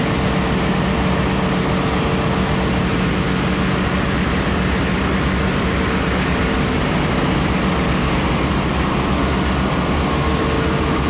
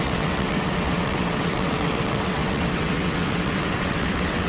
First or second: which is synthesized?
second